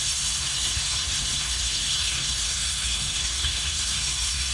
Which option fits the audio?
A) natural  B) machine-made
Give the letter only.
B